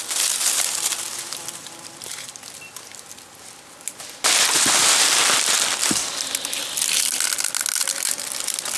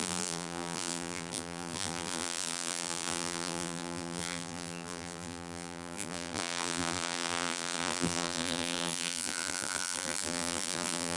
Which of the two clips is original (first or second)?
first